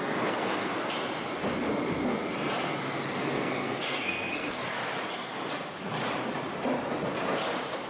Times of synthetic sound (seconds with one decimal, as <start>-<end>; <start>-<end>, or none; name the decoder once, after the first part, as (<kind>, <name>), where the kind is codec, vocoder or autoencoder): 0.0-0.7 (codec, SNAC); 3.2-4.5